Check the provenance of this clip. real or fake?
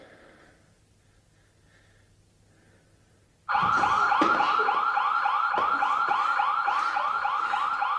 real